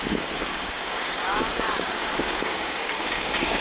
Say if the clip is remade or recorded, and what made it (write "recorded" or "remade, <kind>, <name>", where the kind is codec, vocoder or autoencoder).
remade, codec, DAC